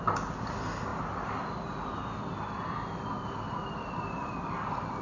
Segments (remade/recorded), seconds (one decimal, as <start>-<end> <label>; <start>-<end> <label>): 0.0-5.0 recorded